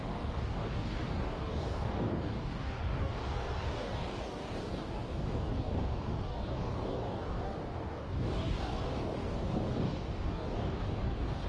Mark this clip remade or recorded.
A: remade